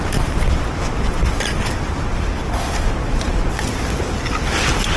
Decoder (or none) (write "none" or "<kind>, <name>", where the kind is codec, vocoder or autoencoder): none